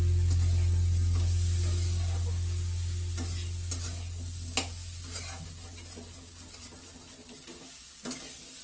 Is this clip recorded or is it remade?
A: recorded